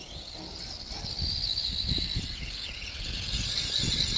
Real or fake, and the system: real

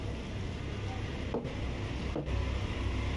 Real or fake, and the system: real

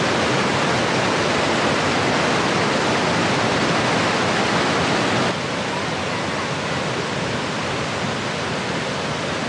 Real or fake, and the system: real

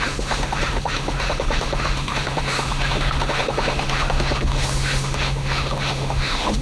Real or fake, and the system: fake, autoencoder, DAC-VAE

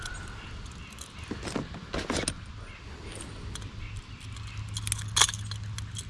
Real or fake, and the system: real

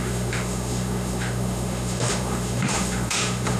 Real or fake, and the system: fake, autoencoder, DAC-VAE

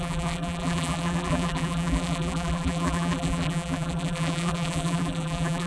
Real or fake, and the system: fake, vocoder, BigVGAN v2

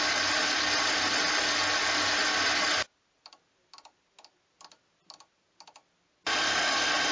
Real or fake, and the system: real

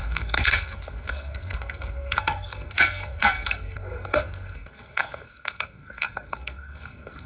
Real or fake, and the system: fake, codec, SNAC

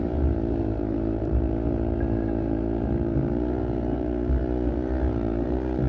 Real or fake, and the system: fake, vocoder, BigVGAN v2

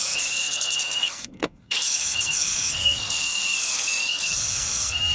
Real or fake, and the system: fake, codec, SNAC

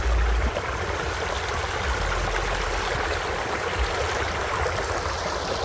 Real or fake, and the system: real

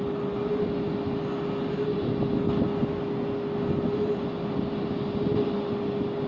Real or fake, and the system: real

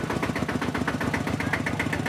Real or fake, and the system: real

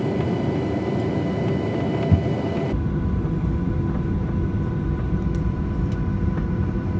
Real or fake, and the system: real